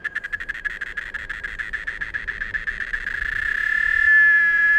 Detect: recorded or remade remade